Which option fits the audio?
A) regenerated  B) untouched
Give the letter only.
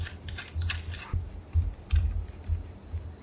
B